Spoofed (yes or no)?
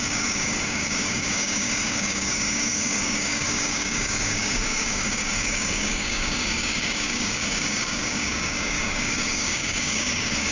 yes